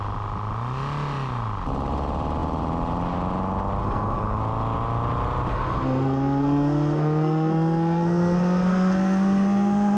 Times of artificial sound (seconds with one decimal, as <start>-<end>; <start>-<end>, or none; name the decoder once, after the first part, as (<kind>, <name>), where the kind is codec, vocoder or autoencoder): 3.8-4.4 (codec, SNAC); 5.5-10.0